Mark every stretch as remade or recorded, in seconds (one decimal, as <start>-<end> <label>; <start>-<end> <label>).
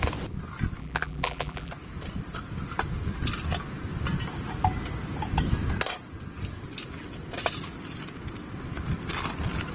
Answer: 0.0-0.8 recorded; 0.8-1.7 remade; 1.7-9.7 recorded